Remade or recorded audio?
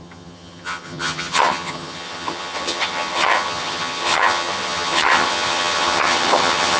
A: remade